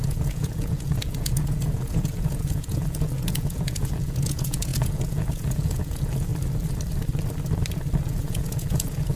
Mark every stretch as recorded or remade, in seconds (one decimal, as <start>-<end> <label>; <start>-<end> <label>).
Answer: 0.0-6.3 remade; 6.3-8.1 recorded; 8.1-9.2 remade

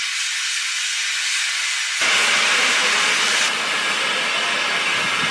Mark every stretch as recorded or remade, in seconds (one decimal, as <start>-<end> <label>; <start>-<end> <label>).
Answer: 0.0-5.3 recorded

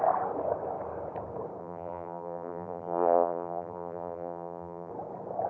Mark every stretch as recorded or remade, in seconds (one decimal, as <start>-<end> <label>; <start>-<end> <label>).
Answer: 0.0-1.6 recorded; 1.6-4.9 remade; 4.9-5.5 recorded

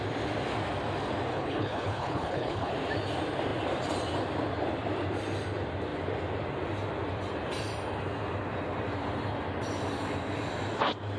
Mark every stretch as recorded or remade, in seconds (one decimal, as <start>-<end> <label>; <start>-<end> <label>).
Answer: 0.0-1.3 recorded; 1.3-2.7 remade; 2.7-11.2 recorded

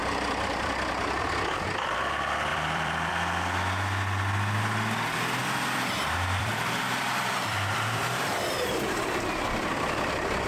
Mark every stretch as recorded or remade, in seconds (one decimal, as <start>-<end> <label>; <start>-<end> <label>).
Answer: 0.0-1.2 remade; 1.2-2.5 recorded; 2.5-3.1 remade; 3.1-5.4 recorded; 5.4-8.7 remade; 8.7-10.5 recorded

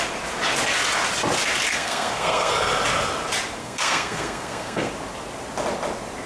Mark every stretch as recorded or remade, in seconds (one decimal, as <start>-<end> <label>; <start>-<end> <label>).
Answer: 0.0-1.7 recorded; 1.7-2.5 remade; 2.5-3.6 recorded; 3.6-4.9 remade; 4.9-6.3 recorded

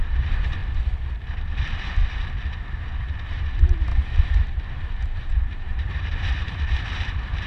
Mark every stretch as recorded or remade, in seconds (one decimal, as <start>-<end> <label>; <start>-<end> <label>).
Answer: 0.0-0.6 remade; 0.6-1.6 recorded; 1.6-2.0 remade; 2.0-2.7 recorded; 2.7-7.5 remade